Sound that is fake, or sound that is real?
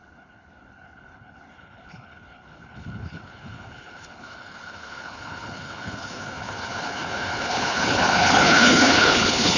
fake